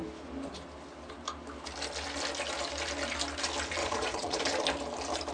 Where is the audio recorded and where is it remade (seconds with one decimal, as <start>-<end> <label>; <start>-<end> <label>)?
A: 0.0-3.8 recorded; 3.8-4.4 remade; 4.4-5.3 recorded